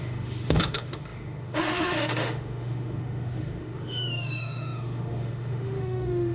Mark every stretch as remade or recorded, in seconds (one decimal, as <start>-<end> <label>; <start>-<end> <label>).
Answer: 0.0-6.3 remade